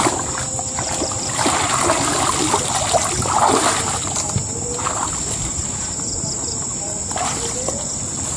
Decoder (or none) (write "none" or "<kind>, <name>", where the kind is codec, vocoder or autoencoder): none